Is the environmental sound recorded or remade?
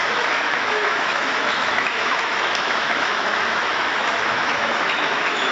remade